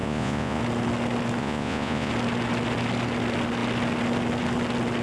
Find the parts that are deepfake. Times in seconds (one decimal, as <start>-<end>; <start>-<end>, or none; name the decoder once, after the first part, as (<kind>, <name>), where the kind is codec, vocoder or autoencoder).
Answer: 0.0-0.6 (vocoder, Vocos); 1.4-2.1